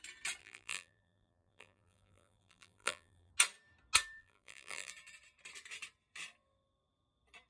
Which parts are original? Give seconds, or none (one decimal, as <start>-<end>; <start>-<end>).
0.0-0.4; 3.3-4.2; 4.9-7.5